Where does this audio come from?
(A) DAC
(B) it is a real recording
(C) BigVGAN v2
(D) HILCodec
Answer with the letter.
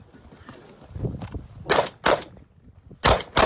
B